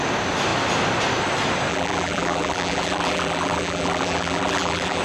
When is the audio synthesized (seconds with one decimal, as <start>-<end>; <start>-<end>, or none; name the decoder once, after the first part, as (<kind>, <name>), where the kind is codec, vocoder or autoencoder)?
1.7-5.0 (vocoder, BigVGAN v2)